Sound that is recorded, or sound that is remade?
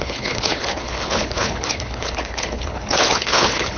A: remade